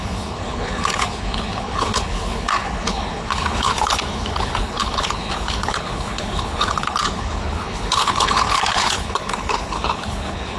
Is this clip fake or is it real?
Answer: fake